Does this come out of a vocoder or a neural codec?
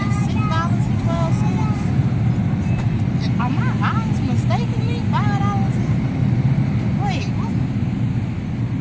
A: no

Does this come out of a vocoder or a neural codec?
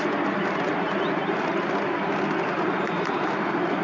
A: no